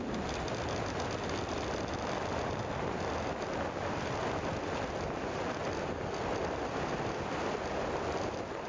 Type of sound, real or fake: real